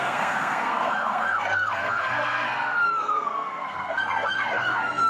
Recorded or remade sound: remade